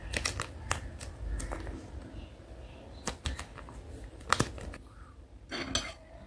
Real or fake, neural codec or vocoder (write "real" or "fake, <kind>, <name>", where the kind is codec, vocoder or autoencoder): real